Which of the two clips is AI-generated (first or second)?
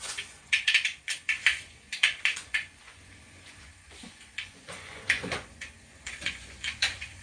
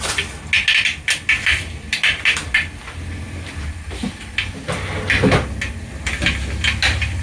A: first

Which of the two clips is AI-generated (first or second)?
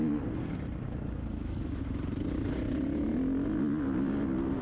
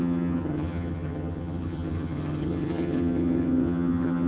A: second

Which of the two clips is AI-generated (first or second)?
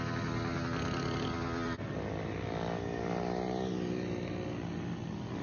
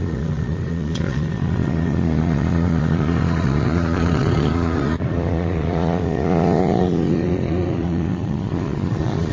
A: second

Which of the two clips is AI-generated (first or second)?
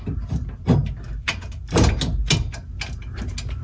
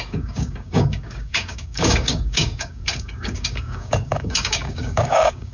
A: second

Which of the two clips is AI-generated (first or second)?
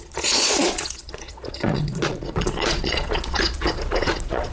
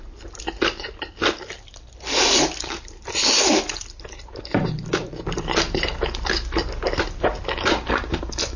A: first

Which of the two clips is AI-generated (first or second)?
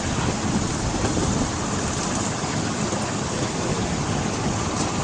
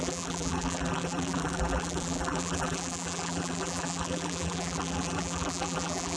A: second